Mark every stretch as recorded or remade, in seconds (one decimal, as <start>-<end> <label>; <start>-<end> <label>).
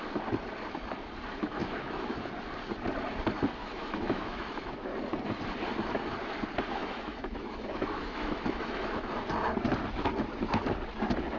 0.0-1.6 recorded; 1.6-2.3 remade; 2.3-3.6 recorded; 3.6-4.9 remade; 4.9-6.8 recorded; 6.8-9.1 remade; 9.1-11.4 recorded